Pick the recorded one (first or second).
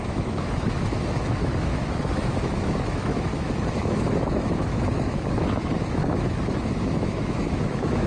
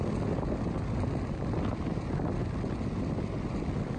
second